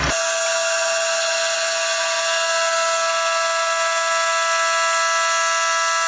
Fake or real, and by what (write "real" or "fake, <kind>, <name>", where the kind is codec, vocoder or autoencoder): real